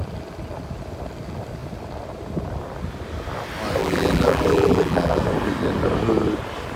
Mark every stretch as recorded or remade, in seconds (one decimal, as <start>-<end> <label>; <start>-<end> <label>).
0.0-3.8 recorded; 3.8-5.2 remade; 5.2-6.8 recorded